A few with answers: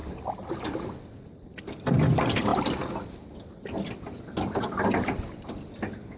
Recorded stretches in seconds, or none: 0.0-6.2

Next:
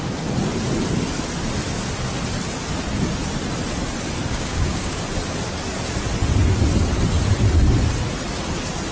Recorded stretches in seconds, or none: 0.0-4.3; 5.0-8.9

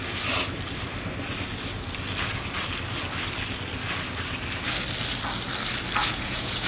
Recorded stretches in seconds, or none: 0.0-6.0

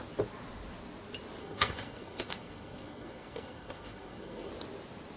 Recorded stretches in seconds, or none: 0.0-1.4; 4.5-5.2